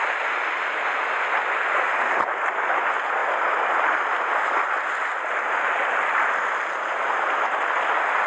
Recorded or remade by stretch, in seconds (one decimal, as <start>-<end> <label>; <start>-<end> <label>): 0.0-8.3 recorded